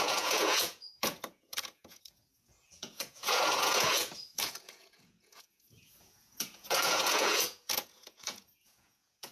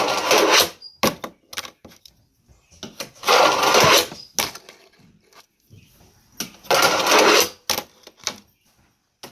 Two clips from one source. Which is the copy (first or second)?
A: first